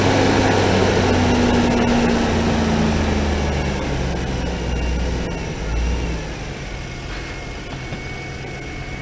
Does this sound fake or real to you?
real